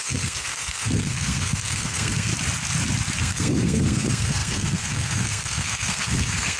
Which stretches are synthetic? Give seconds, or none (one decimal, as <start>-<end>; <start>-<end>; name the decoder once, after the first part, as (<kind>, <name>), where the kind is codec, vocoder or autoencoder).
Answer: 0.0-2.3 (codec, SNAC); 3.2-6.6